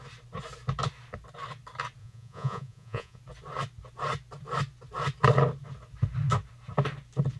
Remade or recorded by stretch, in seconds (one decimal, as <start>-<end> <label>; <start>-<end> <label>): 0.0-2.0 recorded; 2.0-3.2 remade; 3.2-7.4 recorded